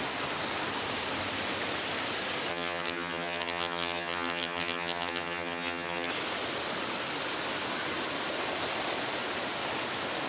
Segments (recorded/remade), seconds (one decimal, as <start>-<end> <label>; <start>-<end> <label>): 0.0-2.5 recorded; 2.5-6.1 remade; 6.1-10.3 recorded

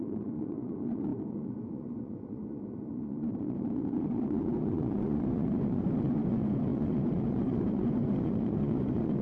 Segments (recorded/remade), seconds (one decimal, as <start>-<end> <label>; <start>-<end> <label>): 0.0-9.2 remade

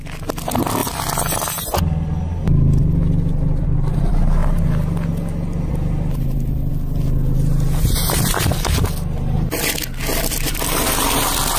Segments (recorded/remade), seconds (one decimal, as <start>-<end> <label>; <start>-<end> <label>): 0.0-0.8 remade; 0.8-2.8 recorded; 2.8-4.4 remade; 4.4-5.7 recorded; 5.7-6.7 remade; 6.7-10.1 recorded; 10.1-11.6 remade

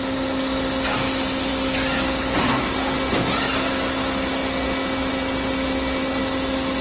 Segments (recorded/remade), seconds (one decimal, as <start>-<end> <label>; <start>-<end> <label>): 0.0-6.8 recorded